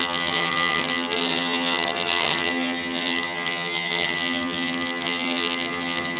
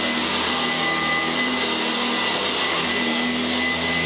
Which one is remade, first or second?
first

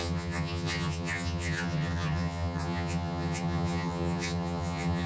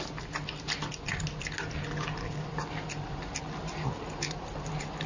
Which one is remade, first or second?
first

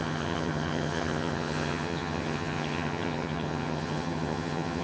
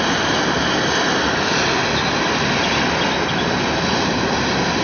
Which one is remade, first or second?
first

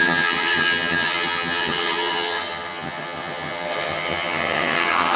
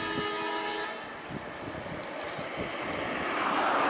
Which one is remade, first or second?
first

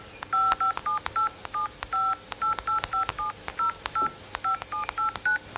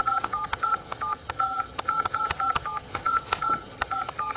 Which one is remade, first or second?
second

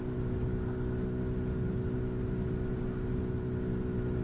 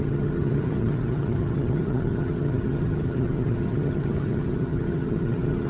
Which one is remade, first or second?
second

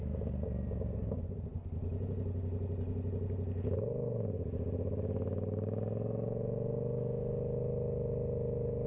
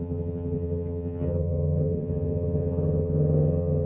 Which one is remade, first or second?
second